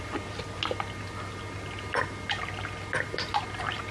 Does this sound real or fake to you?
real